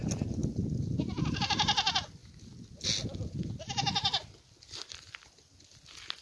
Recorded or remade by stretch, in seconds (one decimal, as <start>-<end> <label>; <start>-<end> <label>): 0.0-6.2 recorded